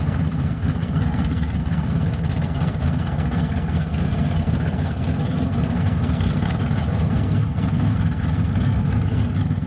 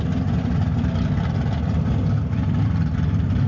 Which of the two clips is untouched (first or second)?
second